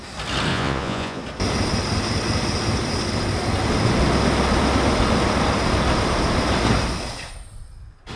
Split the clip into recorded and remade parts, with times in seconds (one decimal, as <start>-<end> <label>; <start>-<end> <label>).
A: 0.0-0.5 recorded; 0.5-1.2 remade; 1.2-8.2 recorded